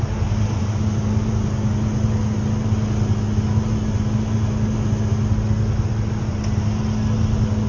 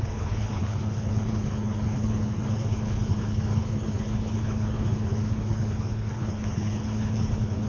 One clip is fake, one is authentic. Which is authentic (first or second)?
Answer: first